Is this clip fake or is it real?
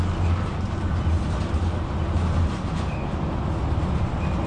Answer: real